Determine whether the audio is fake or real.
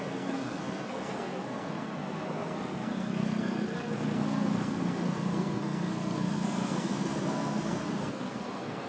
fake